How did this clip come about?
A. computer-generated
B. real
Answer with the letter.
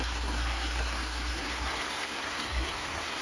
A